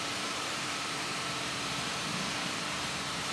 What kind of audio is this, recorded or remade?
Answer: remade